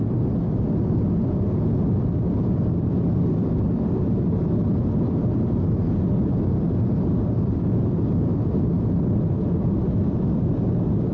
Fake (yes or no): no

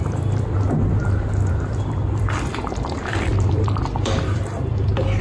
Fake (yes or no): yes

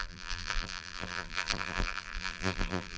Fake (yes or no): yes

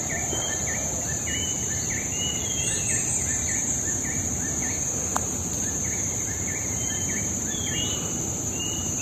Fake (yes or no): yes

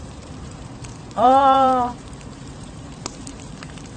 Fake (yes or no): yes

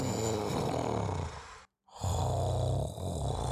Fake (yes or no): no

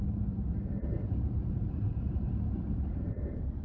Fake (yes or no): yes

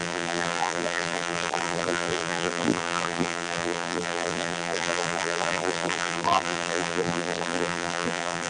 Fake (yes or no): yes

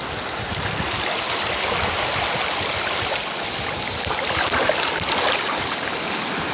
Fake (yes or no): no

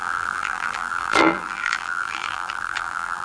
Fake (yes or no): yes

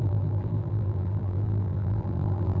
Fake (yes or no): yes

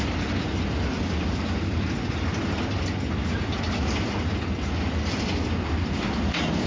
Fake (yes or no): no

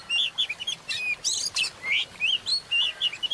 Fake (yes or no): no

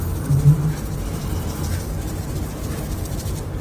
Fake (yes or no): yes